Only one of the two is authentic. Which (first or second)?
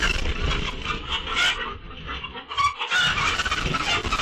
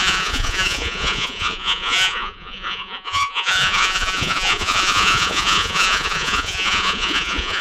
first